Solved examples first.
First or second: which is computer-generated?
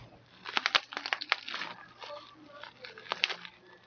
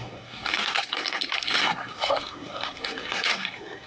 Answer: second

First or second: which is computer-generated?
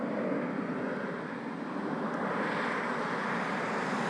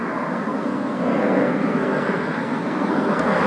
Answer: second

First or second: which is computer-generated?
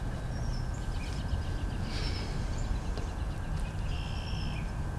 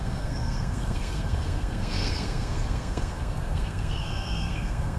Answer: second